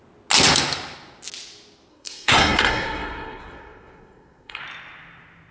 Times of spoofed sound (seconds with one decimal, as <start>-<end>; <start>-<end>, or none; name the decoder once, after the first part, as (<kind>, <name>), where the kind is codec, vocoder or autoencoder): 1.9-4.6 (codec, SNAC)